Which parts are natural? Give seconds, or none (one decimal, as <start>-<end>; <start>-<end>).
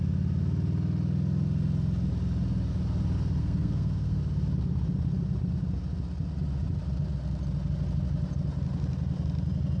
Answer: 0.0-3.4; 4.2-9.8